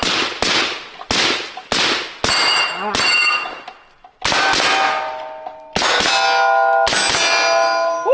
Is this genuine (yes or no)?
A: yes